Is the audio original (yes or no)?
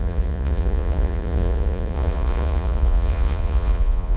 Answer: no